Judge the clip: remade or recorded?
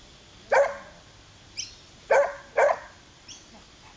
recorded